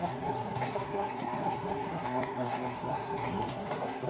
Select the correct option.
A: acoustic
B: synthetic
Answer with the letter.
B